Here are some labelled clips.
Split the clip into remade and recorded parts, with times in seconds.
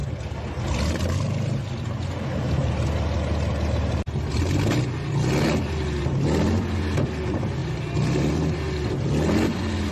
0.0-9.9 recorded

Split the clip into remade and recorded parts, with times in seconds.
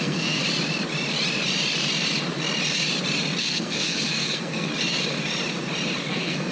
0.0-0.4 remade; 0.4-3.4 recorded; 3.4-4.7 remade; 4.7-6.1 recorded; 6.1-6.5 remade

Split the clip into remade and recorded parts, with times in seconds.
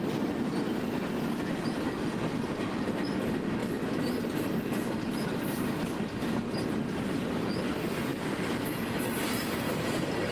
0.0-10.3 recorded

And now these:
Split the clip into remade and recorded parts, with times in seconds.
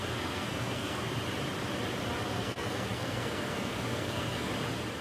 0.0-1.1 remade; 1.1-2.3 recorded; 2.3-4.5 remade; 4.5-5.0 recorded